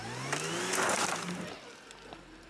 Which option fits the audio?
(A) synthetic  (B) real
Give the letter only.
B